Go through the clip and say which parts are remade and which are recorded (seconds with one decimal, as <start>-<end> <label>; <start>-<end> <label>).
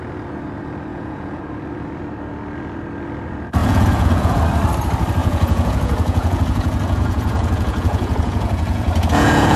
0.0-0.9 recorded; 0.9-1.4 remade; 1.4-3.6 recorded; 3.6-4.4 remade; 4.4-5.2 recorded; 5.2-9.6 remade